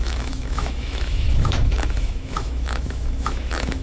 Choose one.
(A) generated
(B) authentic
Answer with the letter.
A